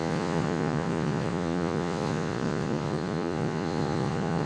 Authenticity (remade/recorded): remade